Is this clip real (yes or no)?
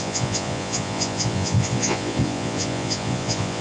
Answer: no